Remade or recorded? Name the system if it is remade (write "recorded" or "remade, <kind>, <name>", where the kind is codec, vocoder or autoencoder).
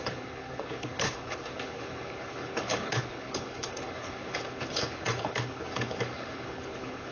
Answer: remade, codec, HILCodec